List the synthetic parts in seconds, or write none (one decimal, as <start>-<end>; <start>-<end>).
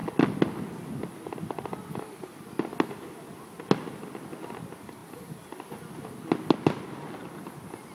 none